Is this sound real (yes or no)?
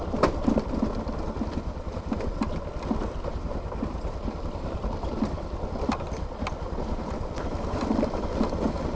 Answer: yes